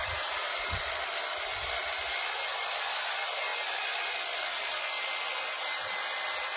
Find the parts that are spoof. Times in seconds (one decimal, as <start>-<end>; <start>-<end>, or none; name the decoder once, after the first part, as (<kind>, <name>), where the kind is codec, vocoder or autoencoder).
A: 0.0-0.9 (vocoder, BigVGAN v2)